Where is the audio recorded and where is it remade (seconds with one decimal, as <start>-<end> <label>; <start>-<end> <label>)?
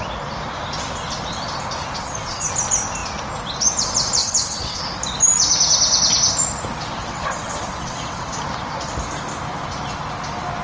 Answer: 0.0-2.0 recorded; 2.0-2.5 remade; 2.5-4.2 recorded; 4.2-4.8 remade; 4.8-7.0 recorded; 7.0-8.4 remade; 8.4-10.6 recorded